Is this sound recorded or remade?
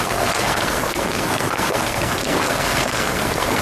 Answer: remade